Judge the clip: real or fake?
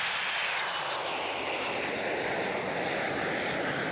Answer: real